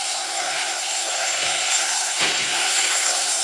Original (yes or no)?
no